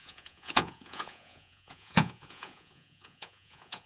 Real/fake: fake